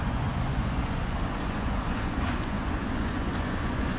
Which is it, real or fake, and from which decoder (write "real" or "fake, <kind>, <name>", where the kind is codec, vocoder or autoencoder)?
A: fake, vocoder, Vocos